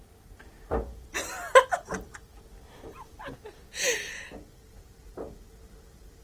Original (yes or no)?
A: yes